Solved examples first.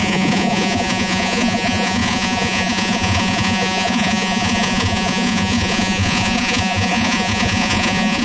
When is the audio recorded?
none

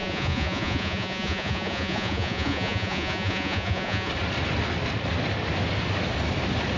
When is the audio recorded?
4.1-6.8

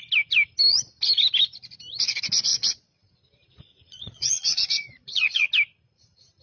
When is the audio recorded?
0.0-2.5; 5.5-6.4

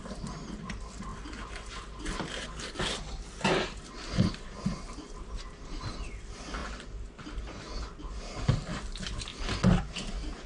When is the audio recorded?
0.0-10.5

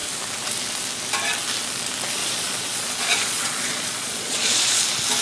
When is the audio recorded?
0.0-2.2; 4.8-5.2

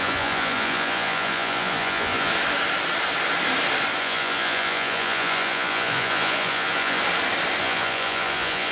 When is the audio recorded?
2.3-4.0; 7.0-7.6

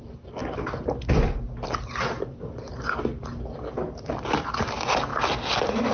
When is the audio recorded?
0.0-5.9

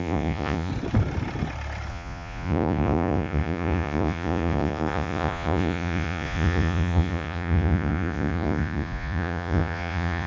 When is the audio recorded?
0.7-1.9